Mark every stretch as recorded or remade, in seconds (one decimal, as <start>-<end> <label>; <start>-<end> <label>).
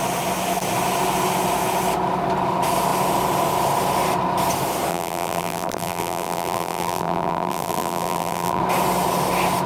0.0-4.9 recorded; 4.9-8.6 remade; 8.6-9.7 recorded